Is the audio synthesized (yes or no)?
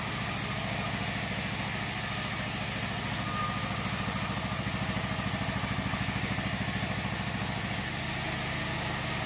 no